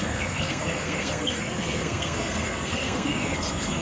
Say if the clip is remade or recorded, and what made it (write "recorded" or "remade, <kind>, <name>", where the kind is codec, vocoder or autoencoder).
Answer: remade, codec, SNAC